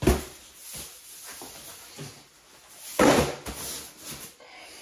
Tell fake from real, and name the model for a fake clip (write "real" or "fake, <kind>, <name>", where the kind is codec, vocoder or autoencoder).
real